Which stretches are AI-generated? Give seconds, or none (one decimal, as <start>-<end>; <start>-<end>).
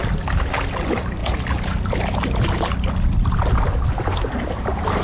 none